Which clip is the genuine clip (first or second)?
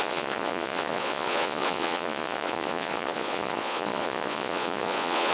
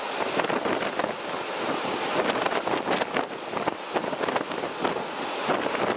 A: second